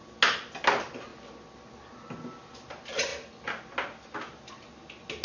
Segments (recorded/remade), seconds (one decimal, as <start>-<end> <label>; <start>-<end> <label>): 0.0-5.2 recorded